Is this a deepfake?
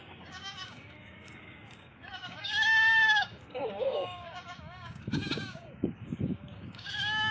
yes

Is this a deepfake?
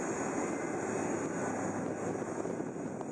no